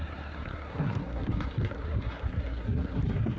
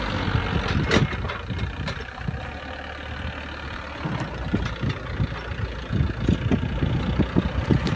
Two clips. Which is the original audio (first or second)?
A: second